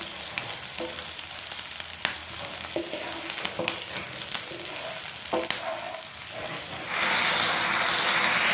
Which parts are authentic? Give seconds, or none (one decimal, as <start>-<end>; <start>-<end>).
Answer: 0.0-8.5